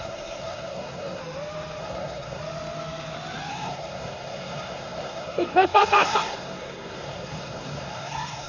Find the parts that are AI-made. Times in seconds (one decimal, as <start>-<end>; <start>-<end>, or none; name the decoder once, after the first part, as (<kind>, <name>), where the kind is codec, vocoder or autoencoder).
0.0-1.2 (codec, SNAC); 1.8-2.4; 3.5-8.5